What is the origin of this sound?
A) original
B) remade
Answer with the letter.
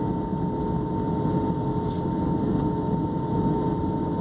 A